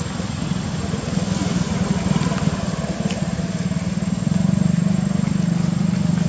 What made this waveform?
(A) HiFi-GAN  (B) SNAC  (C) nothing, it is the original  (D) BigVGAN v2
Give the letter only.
C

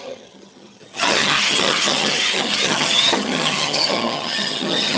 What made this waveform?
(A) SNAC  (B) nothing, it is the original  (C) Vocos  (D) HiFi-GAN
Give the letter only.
D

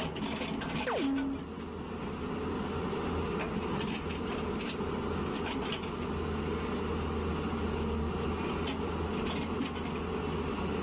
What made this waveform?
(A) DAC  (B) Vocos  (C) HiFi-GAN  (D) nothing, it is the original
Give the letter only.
D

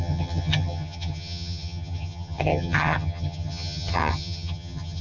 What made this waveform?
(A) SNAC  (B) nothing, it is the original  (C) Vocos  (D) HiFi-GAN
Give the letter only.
D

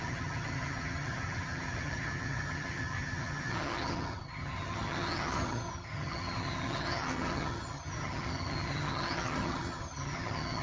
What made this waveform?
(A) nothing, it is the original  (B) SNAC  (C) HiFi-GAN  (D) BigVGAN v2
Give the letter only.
C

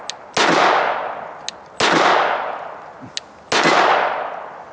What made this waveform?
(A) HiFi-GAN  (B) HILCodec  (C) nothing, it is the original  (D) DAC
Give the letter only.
C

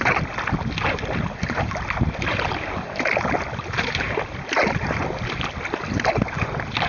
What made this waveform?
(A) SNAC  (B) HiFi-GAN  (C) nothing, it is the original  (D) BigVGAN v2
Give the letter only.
C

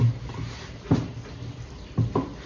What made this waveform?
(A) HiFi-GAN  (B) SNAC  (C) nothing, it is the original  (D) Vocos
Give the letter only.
C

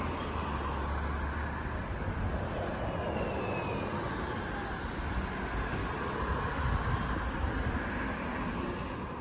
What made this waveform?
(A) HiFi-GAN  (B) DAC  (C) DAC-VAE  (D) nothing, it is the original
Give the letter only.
D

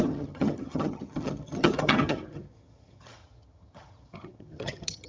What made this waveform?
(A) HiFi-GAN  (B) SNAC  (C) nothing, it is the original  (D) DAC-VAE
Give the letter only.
A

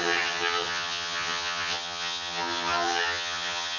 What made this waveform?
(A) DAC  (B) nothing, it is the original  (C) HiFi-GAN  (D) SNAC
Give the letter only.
C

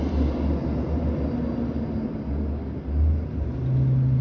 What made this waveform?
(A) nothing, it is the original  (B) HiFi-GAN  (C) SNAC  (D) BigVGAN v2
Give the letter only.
A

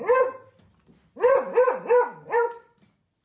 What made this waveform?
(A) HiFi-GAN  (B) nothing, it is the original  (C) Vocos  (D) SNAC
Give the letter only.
B